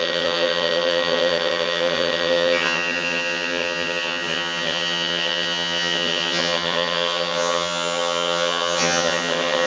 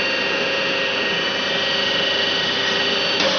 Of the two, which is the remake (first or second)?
first